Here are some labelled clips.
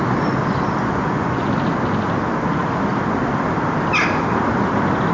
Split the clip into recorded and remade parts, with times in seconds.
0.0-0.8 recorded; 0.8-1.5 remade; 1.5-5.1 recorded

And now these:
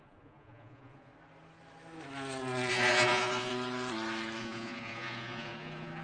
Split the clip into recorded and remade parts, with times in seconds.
0.0-1.1 remade; 1.1-2.7 recorded; 2.7-3.5 remade; 3.5-4.4 recorded; 4.4-6.0 remade

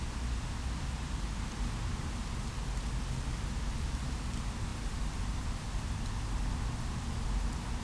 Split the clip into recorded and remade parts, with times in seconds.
0.0-7.8 recorded

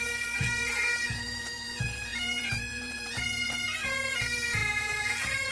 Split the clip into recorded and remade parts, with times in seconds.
0.0-5.5 remade

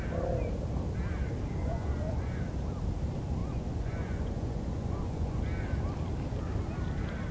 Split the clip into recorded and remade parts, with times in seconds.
0.0-1.6 recorded; 1.6-2.4 remade; 2.4-3.4 recorded; 3.4-5.4 remade; 5.4-7.3 recorded

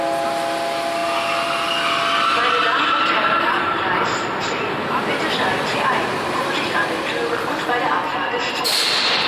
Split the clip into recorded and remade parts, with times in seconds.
0.0-9.3 recorded

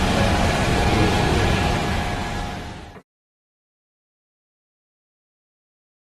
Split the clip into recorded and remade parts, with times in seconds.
0.0-0.7 recorded; 0.7-1.8 remade; 1.8-6.1 recorded